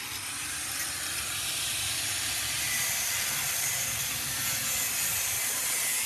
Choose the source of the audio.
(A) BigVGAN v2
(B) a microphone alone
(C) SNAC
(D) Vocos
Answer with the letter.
A